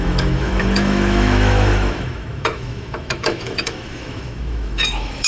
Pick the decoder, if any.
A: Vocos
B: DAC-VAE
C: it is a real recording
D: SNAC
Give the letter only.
B